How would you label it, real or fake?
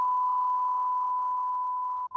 real